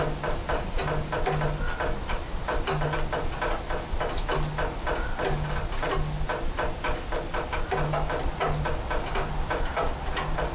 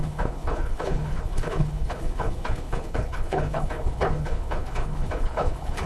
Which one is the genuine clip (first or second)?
first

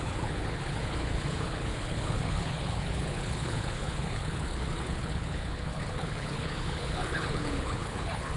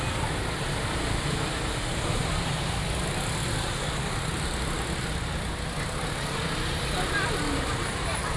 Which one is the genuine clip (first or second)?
second